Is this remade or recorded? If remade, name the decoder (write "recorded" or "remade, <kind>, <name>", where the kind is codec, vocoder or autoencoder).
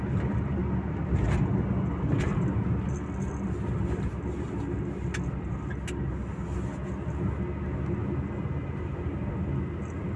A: recorded